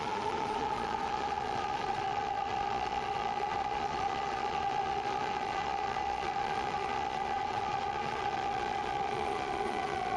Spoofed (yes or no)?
yes